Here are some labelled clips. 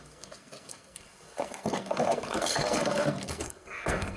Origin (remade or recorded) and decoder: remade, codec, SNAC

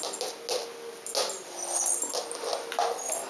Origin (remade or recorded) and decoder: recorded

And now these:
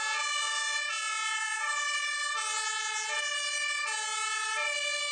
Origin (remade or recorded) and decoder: recorded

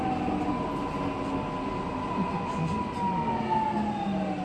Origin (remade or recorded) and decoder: recorded